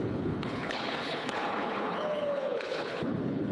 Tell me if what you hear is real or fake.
fake